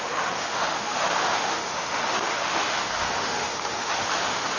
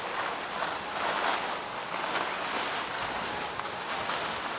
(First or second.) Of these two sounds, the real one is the second